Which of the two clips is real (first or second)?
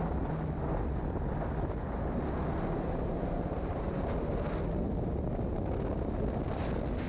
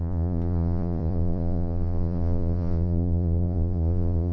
first